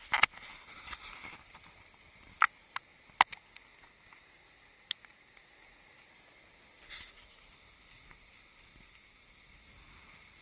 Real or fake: real